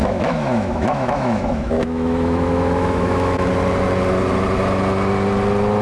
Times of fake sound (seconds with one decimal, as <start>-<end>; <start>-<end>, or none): 0.0-3.5